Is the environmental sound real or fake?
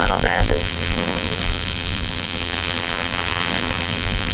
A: fake